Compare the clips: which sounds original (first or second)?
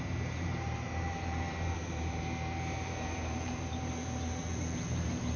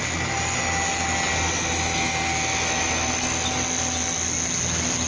second